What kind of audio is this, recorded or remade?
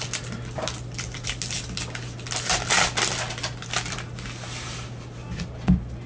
recorded